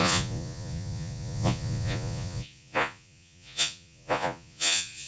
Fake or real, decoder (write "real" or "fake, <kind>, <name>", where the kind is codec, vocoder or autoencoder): fake, vocoder, Vocos